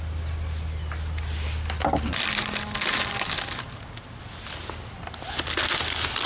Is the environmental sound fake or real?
real